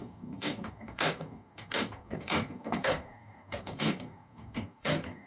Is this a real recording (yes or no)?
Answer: no